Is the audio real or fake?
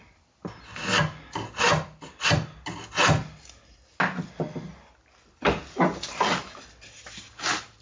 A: real